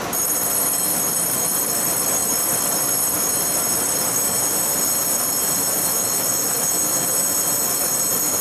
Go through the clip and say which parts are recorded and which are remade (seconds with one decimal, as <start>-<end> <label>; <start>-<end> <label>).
0.0-5.9 recorded; 5.9-6.7 remade; 6.7-8.4 recorded